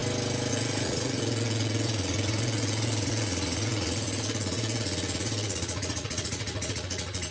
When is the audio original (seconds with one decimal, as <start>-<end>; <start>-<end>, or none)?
0.0-0.5